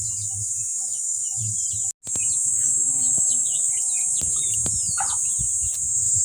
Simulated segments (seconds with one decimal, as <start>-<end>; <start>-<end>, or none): 0.9-1.4; 2.5-3.7